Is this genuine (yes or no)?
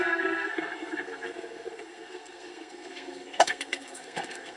no